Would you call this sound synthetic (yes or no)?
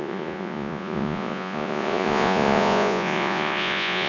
yes